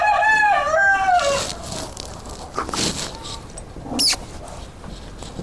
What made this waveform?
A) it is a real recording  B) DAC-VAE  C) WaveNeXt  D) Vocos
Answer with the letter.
A